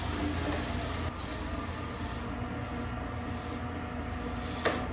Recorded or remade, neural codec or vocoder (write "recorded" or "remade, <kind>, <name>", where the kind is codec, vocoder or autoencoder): recorded